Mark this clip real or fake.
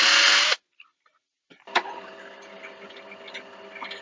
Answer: real